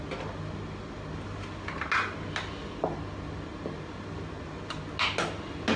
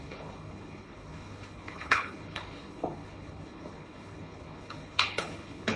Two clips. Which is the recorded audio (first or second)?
first